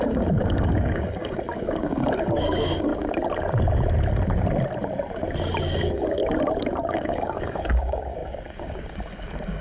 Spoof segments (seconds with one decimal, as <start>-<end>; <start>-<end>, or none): 0.0-2.9; 5.6-6.2; 6.9-9.6